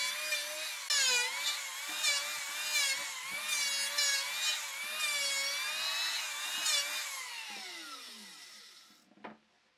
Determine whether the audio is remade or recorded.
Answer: recorded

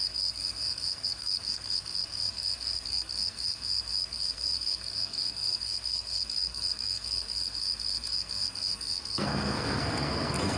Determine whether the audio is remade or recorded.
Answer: remade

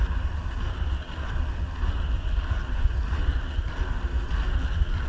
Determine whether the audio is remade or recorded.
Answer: recorded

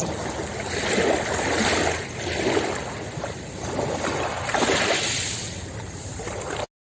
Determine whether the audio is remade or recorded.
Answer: recorded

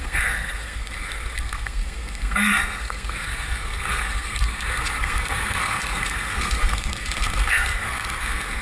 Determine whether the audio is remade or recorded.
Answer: remade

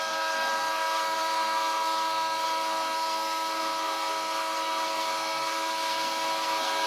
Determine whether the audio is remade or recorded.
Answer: remade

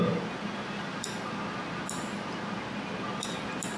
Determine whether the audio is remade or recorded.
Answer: recorded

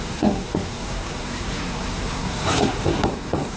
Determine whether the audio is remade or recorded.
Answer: remade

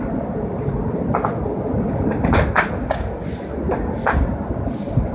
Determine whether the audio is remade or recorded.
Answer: recorded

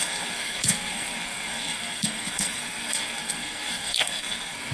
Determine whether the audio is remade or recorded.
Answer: remade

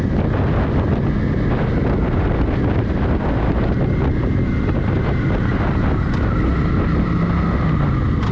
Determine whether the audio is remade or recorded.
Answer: recorded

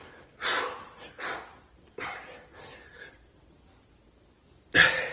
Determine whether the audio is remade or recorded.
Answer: recorded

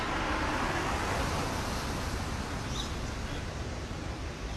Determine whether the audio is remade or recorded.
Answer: recorded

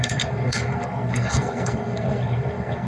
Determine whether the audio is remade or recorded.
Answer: remade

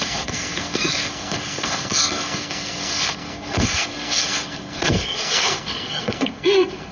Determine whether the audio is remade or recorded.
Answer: remade